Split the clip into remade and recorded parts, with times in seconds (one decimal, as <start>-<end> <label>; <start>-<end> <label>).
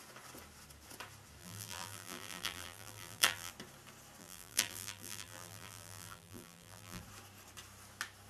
0.0-1.4 recorded; 1.4-3.5 remade; 3.5-4.2 recorded; 4.2-7.0 remade; 7.0-8.3 recorded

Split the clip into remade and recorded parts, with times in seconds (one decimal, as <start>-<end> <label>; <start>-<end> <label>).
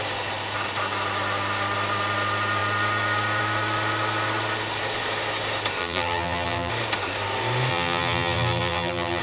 0.0-5.8 recorded; 5.8-6.7 remade; 6.7-7.7 recorded; 7.7-9.2 remade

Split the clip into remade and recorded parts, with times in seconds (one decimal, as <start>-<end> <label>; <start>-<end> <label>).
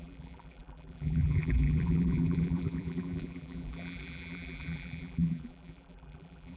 0.0-6.6 remade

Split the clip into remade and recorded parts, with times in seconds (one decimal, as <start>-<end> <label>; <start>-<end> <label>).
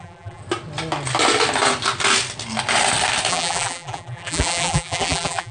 0.0-0.4 remade; 0.4-3.3 recorded; 3.3-5.5 remade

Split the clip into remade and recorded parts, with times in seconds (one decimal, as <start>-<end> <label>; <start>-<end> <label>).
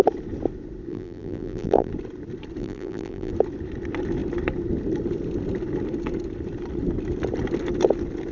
0.0-0.9 recorded; 0.9-1.9 remade; 1.9-2.6 recorded; 2.6-3.3 remade; 3.3-8.3 recorded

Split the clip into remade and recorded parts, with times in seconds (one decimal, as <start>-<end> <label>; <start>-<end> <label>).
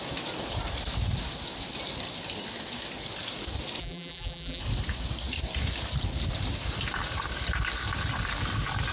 0.0-3.8 recorded; 3.8-4.6 remade; 4.6-8.9 recorded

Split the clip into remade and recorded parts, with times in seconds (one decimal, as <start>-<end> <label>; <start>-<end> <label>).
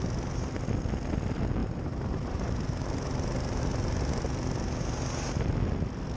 0.0-1.6 recorded; 1.6-3.6 remade; 3.6-6.2 recorded